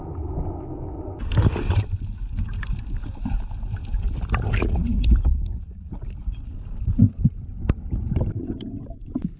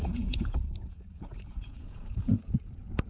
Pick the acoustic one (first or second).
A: first